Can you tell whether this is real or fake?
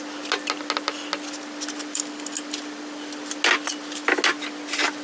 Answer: real